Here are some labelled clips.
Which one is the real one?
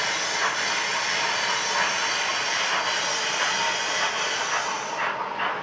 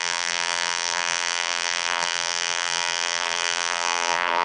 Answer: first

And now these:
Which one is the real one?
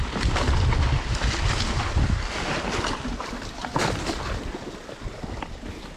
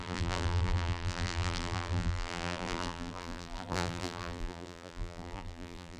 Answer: first